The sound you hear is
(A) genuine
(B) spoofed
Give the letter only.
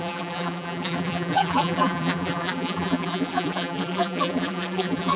B